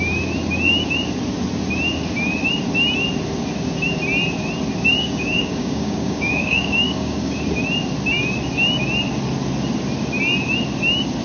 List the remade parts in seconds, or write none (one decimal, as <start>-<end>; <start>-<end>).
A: 5.0-7.4